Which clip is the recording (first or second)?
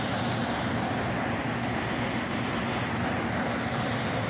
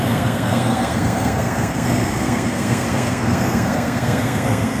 first